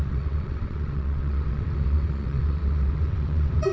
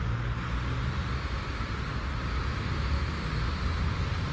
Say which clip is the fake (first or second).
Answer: first